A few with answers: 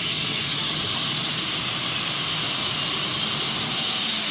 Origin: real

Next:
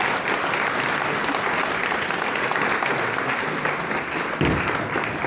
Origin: real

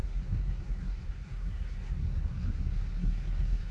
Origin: fake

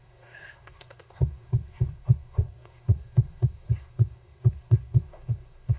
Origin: fake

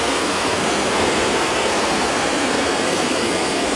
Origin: fake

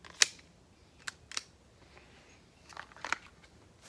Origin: real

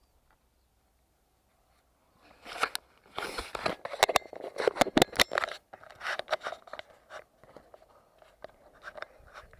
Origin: real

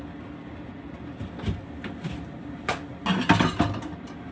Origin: real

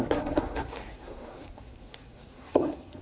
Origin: fake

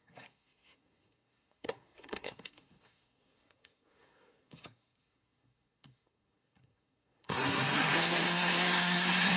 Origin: fake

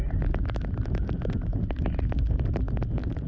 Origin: real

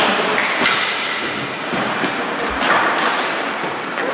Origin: real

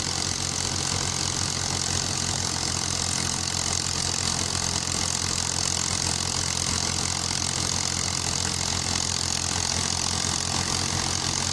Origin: real